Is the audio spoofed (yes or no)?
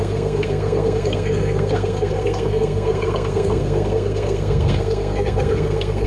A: yes